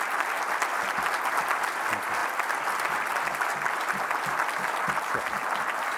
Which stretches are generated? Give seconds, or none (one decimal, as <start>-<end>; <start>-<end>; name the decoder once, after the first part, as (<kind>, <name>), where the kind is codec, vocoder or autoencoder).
none